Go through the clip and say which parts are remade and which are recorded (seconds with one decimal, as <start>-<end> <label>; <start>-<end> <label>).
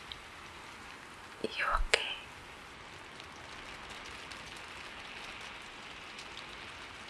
0.0-7.1 recorded